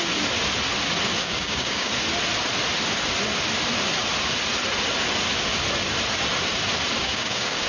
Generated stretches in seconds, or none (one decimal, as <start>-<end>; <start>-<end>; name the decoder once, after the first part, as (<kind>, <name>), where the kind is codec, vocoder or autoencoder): 1.2-1.9 (codec, DAC); 7.0-7.7